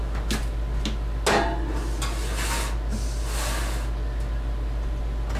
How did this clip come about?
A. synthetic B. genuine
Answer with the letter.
B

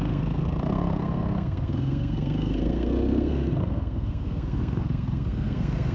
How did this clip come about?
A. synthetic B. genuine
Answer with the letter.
A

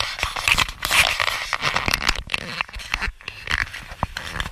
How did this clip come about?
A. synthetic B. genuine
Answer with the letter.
B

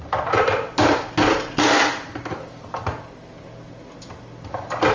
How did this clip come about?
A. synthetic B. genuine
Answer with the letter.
B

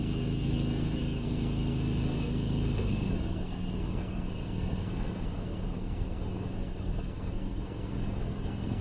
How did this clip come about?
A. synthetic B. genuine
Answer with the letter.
A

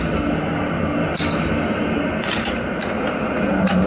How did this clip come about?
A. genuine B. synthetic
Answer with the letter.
A